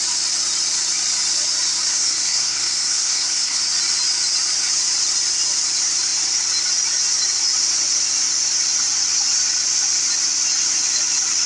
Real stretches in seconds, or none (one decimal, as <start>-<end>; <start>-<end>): 0.0-1.9; 3.6-11.5